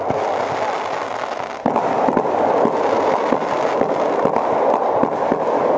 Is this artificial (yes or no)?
no